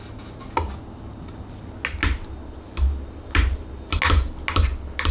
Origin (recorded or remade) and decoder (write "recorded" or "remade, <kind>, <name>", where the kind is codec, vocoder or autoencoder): recorded